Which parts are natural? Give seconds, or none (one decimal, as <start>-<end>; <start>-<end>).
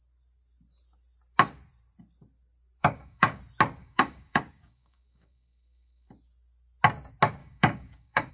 0.0-2.8; 3.4-3.8; 6.1-7.4